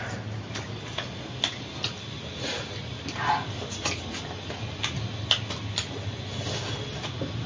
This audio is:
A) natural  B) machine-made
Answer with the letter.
A